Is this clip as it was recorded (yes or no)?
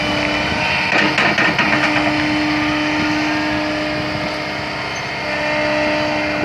yes